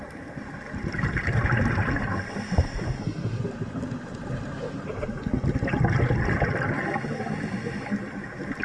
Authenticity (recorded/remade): recorded